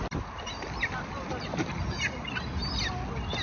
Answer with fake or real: real